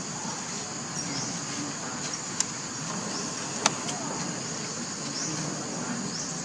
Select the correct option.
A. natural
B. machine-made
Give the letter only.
A